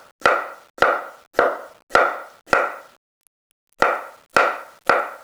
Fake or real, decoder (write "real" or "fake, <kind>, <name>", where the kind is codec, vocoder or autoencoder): real